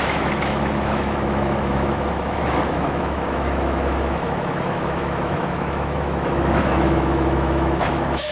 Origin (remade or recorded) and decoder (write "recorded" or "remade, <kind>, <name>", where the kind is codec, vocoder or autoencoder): remade, autoencoder, DAC-VAE